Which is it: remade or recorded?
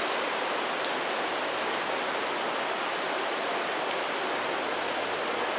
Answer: recorded